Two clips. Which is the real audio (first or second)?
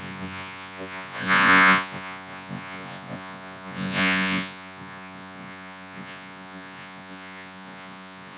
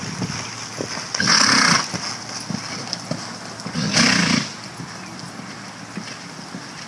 second